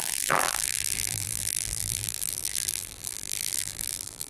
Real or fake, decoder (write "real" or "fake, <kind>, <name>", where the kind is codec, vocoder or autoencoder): fake, vocoder, BigVGAN v2